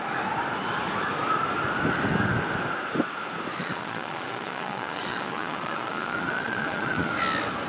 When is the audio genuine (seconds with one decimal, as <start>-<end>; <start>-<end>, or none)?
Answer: 0.0-3.6; 7.1-7.7